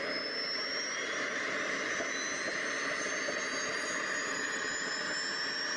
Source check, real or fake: real